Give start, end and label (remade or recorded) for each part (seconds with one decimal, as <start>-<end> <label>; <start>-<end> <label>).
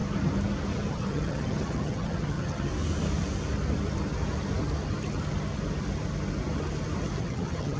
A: 0.0-0.9 recorded; 0.9-2.7 remade; 2.7-7.2 recorded; 7.2-7.8 remade